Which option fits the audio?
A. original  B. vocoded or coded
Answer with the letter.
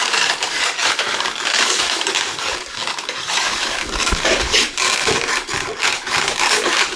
B